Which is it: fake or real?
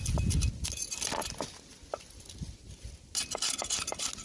real